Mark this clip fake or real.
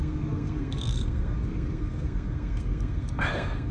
fake